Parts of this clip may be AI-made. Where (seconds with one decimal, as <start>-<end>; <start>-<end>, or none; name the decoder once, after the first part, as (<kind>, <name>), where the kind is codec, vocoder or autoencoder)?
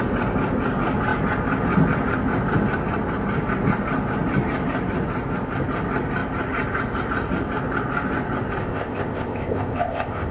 8.6-10.3 (codec, ZipCodec)